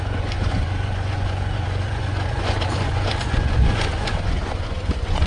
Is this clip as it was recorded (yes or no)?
no